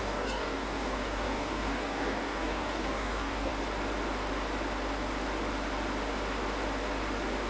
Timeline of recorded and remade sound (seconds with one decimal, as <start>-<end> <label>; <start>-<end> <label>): 0.0-3.5 remade; 3.5-7.5 recorded